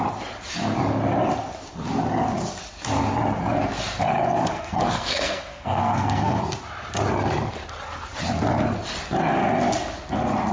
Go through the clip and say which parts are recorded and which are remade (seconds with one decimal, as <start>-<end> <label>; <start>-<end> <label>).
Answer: 0.0-4.5 recorded; 4.5-6.4 remade; 6.4-10.5 recorded